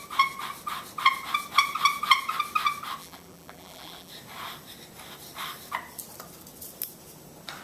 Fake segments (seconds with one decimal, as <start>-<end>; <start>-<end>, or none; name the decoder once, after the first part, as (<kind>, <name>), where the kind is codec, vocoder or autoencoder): 3.0-4.1 (vocoder, BigVGAN v2)